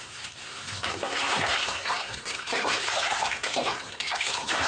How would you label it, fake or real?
fake